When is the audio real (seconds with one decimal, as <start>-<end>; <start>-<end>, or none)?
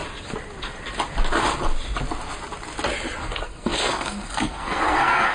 0.0-3.2